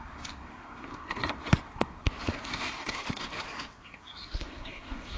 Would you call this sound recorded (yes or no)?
no